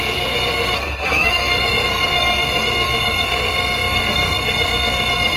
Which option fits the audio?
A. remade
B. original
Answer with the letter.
A